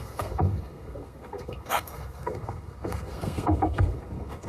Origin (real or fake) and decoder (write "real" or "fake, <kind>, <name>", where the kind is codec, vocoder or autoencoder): fake, codec, SNAC